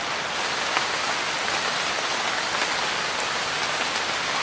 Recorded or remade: recorded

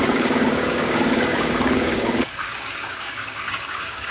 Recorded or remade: remade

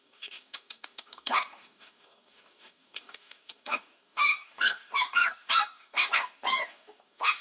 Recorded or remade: remade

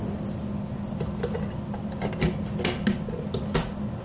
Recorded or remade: recorded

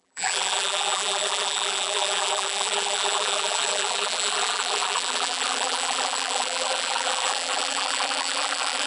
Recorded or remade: remade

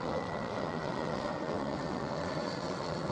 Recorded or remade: remade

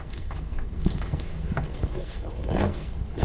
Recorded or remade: remade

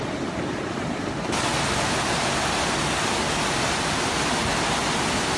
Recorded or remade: recorded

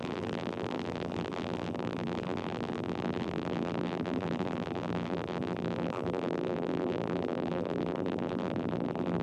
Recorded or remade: remade